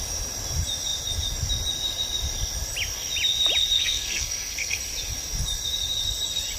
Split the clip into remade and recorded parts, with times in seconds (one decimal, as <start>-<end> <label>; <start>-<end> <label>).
0.0-3.8 recorded; 3.8-4.8 remade; 4.8-6.6 recorded